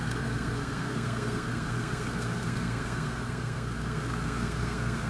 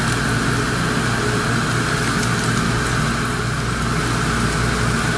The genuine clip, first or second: second